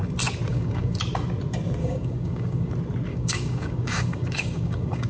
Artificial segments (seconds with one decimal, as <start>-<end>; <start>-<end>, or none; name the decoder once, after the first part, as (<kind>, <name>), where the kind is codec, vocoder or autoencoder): 0.5-1.0 (codec, DAC); 1.8-2.7; 3.1-5.1